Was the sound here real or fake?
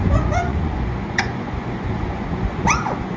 fake